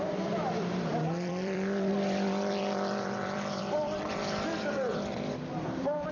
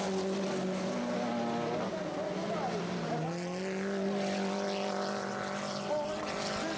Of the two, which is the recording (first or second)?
second